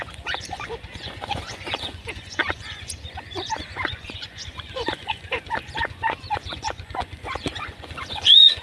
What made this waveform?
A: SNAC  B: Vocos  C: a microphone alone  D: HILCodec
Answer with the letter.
B